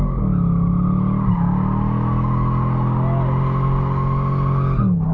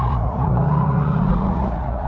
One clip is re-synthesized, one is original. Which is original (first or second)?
first